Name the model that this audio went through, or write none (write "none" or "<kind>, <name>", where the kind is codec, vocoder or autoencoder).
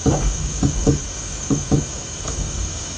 codec, DAC